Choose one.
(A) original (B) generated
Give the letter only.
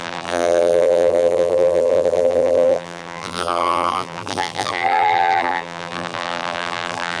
B